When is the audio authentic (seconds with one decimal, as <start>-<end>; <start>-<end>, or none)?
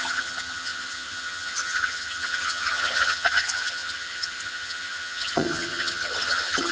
none